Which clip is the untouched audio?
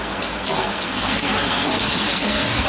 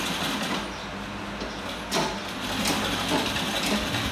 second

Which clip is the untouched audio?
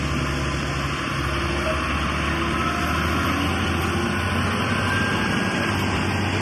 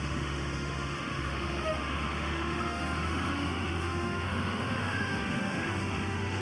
first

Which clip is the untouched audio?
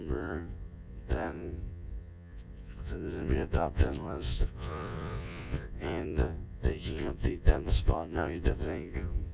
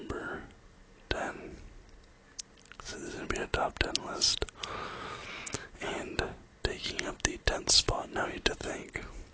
second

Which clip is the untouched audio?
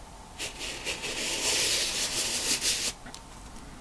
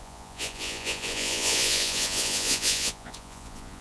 first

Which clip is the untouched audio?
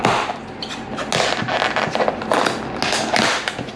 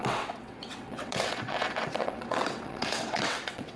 first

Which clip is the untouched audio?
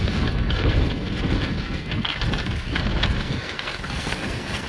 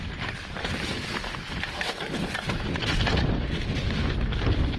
second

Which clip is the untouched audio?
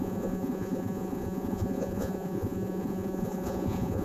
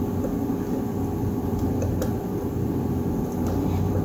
second